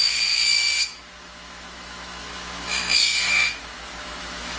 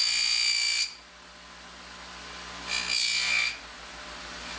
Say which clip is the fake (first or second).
first